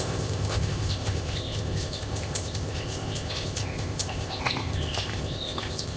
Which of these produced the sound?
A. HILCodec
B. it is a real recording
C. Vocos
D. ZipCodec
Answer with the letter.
D